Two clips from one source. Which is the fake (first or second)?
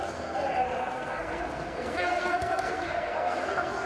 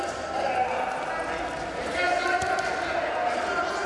first